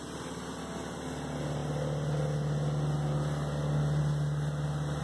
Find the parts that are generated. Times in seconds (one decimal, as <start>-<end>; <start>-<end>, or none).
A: none